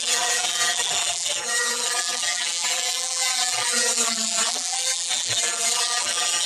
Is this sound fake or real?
fake